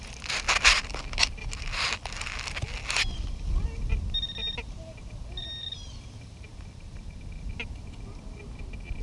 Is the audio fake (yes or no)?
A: no